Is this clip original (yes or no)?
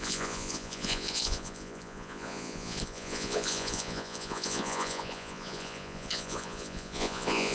no